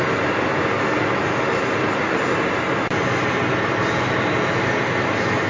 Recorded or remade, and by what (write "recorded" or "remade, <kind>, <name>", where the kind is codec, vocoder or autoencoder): recorded